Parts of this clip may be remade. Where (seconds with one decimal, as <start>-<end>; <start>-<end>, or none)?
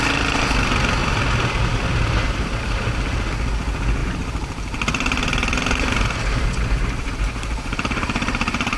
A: 1.0-2.8; 4.0-8.8